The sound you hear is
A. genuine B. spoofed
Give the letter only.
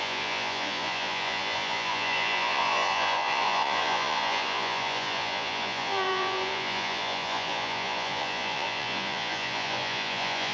B